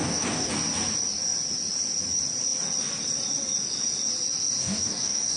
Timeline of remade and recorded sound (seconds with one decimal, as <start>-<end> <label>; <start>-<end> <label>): 0.0-0.5 remade; 0.5-4.6 recorded; 4.6-5.4 remade

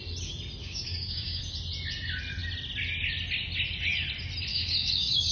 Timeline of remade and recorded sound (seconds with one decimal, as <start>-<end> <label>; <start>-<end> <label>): 0.0-0.6 recorded; 0.6-1.4 remade; 1.4-4.5 recorded; 4.5-5.3 remade

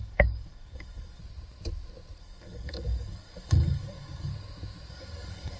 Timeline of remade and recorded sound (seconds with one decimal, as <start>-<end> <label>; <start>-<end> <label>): 0.0-1.2 remade; 1.2-2.2 recorded; 2.2-4.3 remade; 4.3-4.9 recorded; 4.9-5.6 remade

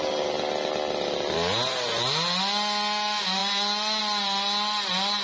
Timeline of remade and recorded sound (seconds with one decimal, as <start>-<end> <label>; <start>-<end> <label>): 0.0-5.2 recorded

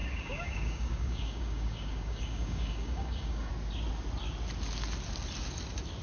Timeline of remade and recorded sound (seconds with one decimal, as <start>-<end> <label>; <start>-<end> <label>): 0.0-3.5 remade; 3.5-6.0 recorded

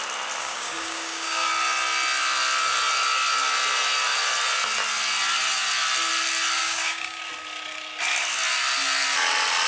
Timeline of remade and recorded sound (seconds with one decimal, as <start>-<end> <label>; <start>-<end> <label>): 0.0-0.4 recorded; 0.4-1.5 remade; 1.5-6.6 recorded; 6.6-7.2 remade; 7.2-9.7 recorded

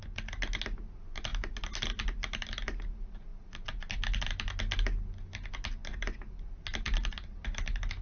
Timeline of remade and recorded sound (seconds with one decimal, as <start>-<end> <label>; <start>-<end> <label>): 0.0-8.0 recorded

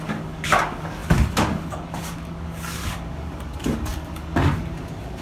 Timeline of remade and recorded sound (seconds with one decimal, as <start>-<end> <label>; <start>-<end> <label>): 0.0-5.2 remade